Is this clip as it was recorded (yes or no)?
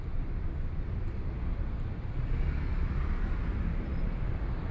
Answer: yes